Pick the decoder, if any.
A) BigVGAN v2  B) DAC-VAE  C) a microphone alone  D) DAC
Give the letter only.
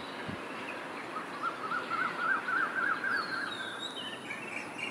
C